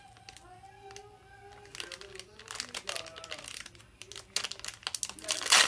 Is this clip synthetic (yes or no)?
no